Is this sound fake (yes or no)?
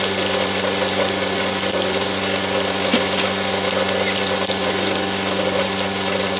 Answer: no